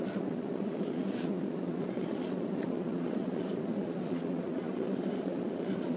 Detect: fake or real fake